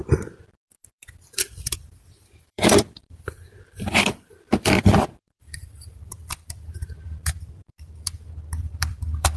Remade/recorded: remade